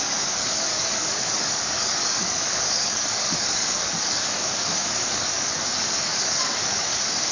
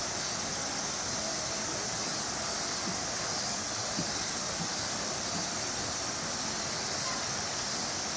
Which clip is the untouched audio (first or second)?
second